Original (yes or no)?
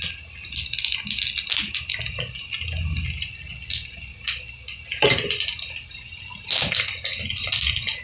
yes